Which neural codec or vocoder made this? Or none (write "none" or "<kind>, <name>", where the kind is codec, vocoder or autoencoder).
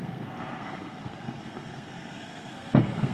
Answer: codec, SNAC